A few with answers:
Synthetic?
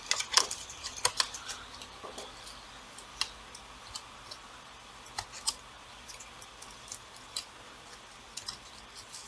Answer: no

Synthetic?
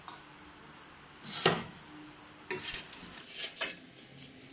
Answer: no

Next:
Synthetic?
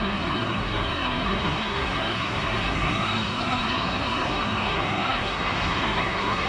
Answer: yes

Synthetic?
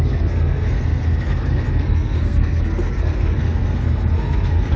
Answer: yes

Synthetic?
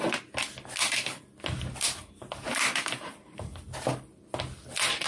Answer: no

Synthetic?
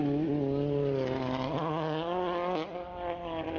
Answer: no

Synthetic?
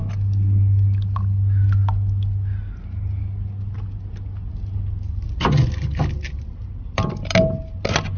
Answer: no